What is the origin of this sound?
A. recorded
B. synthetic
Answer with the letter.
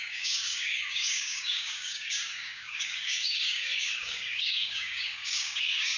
B